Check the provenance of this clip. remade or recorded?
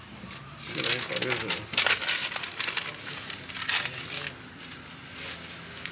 recorded